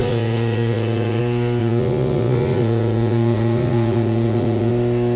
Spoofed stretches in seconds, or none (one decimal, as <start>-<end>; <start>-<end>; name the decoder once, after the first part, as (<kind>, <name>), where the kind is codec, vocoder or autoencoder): 0.0-1.2 (vocoder, Vocos); 1.6-4.7

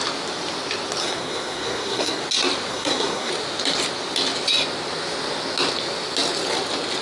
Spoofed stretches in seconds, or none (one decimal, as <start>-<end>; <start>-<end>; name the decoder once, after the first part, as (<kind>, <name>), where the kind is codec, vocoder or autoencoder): 1.0-2.2 (codec, SNAC); 2.7-3.3

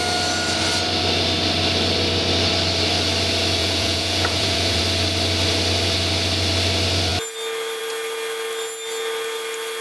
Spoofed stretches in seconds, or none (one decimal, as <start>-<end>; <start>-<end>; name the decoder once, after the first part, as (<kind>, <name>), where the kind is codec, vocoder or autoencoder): 3.6-4.8 (vocoder, Vocos)

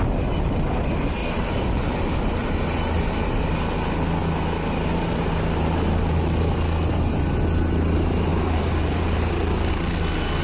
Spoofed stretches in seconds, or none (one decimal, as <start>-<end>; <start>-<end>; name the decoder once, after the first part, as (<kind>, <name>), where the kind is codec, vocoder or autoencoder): 1.2-3.0 (vocoder, BigVGAN v2); 8.3-9.7